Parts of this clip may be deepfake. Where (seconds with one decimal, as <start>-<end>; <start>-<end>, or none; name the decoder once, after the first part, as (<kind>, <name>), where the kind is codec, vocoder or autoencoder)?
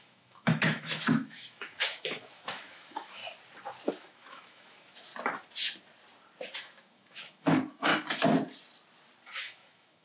0.0-3.2 (autoencoder, DAC-VAE); 3.9-5.1; 6.6-7.9; 9.4-10.0